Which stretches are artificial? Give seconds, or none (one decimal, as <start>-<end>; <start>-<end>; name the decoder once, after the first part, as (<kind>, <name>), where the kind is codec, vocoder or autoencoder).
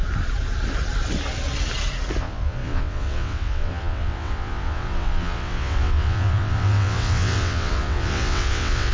2.2-8.9 (vocoder, WaveNeXt)